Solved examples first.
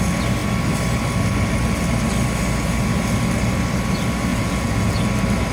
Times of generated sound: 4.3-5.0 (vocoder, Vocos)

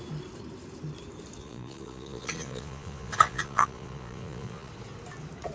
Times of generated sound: 1.4-4.7 (vocoder, Vocos)